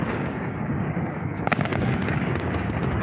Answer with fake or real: fake